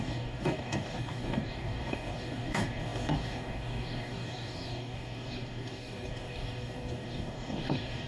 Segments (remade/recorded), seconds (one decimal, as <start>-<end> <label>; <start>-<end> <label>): 0.0-8.1 remade